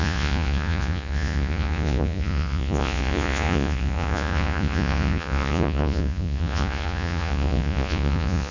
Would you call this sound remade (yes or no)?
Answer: yes